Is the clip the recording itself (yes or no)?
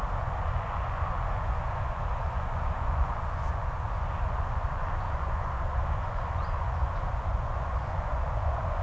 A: no